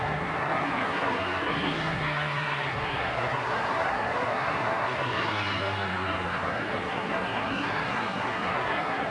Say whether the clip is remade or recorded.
remade